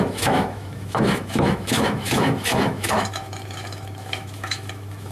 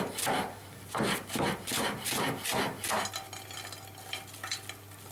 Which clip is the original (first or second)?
second